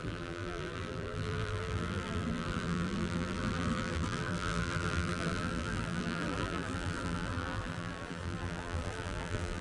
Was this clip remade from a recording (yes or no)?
yes